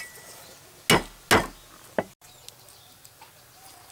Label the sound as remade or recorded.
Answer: recorded